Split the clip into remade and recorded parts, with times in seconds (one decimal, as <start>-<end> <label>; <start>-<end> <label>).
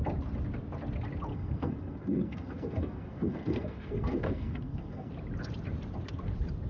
0.0-1.3 recorded; 1.3-5.1 remade; 5.1-6.7 recorded